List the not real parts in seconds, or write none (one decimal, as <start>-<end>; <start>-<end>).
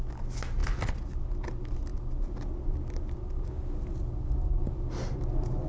none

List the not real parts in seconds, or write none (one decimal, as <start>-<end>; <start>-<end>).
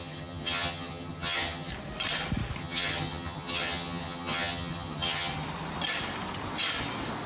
0.0-1.7; 2.6-5.3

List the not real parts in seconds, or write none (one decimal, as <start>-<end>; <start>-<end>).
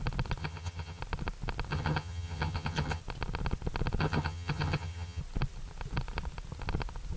0.4-1.0; 1.7-3.0; 4.0-5.2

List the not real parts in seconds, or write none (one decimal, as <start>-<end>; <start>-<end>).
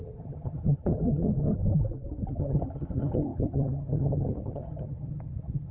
0.0-1.6; 2.3-5.7